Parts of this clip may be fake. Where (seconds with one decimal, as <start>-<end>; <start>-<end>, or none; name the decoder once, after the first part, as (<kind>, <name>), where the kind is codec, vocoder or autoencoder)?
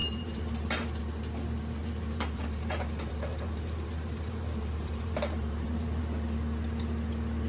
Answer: 0.0-1.0 (vocoder, BigVGAN v2); 1.8-6.0